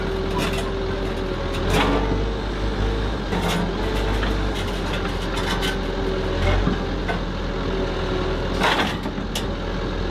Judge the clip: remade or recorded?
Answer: recorded